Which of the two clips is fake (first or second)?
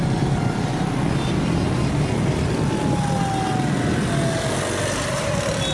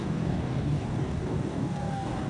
second